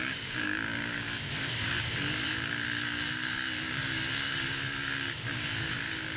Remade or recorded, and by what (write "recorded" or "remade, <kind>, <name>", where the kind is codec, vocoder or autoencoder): remade, codec, DAC